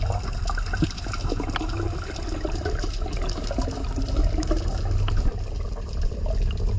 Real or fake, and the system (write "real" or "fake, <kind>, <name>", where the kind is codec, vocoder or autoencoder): real